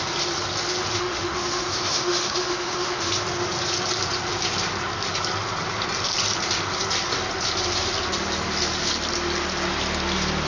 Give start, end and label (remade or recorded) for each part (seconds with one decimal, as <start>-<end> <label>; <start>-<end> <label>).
0.0-0.9 recorded; 0.9-3.1 remade; 3.1-10.5 recorded